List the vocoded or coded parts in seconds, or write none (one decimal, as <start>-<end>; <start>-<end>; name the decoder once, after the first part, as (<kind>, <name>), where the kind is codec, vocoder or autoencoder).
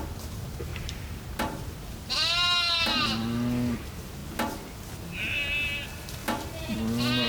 0.7-1.9 (vocoder, BigVGAN v2)